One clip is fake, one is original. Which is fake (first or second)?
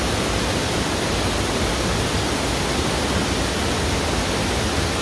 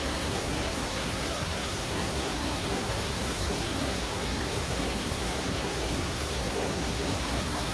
second